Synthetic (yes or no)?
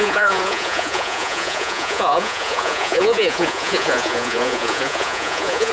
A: yes